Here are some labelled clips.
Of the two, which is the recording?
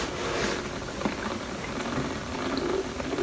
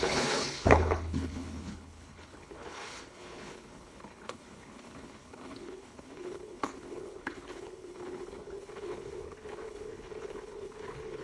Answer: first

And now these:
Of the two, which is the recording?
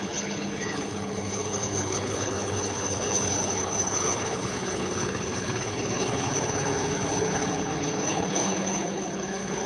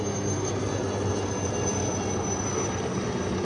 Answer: second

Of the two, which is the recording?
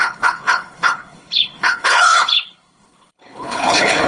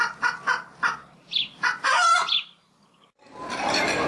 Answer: second